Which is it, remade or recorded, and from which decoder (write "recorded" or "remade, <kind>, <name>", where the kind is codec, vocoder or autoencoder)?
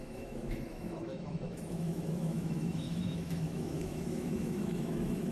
remade, autoencoder, DAC-VAE